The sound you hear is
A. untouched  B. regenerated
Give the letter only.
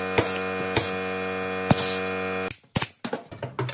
A